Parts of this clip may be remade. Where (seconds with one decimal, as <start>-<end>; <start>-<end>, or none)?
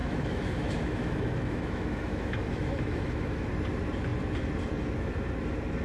0.0-3.5